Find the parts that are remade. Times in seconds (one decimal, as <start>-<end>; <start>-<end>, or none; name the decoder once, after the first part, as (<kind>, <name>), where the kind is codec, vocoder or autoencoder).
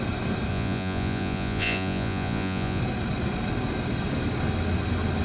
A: 0.5-2.8 (vocoder, Vocos)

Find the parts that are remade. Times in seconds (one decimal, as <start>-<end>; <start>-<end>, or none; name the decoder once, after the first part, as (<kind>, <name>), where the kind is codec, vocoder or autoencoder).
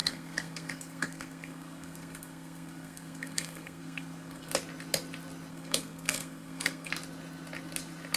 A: 0.0-4.5 (codec, SNAC); 5.5-6.9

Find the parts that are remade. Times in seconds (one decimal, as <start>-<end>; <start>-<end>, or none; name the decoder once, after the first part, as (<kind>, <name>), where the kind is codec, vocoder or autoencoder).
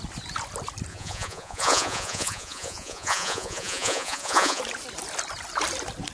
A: 0.9-4.6 (vocoder, Vocos)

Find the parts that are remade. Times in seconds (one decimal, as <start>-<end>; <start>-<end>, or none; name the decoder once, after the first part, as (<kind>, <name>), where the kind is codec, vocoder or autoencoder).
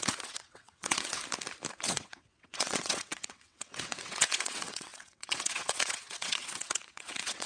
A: 0.0-1.2 (vocoder, WaveNeXt); 1.7-7.5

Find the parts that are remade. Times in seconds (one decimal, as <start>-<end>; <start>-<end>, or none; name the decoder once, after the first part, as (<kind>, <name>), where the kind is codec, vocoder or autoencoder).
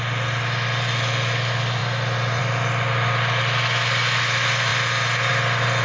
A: none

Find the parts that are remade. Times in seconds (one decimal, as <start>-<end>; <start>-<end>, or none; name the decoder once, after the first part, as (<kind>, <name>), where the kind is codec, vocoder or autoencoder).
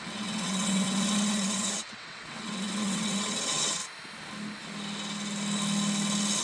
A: 0.0-3.8 (vocoder, WaveNeXt)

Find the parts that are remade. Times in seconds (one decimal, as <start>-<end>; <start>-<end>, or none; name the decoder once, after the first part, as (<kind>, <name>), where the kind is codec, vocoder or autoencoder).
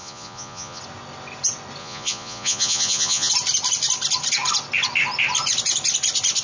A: 0.0-0.8 (vocoder, Vocos); 1.8-3.3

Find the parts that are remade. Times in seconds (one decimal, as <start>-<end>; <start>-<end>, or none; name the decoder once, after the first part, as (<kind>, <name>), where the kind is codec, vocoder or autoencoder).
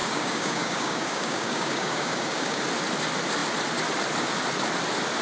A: 0.0-2.6 (codec, DAC)